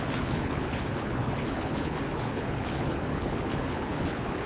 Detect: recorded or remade remade